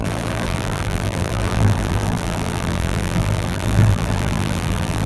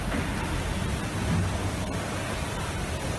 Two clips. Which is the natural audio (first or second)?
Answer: second